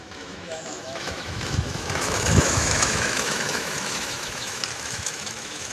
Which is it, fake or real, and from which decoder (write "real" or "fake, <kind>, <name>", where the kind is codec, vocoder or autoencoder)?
fake, autoencoder, DAC-VAE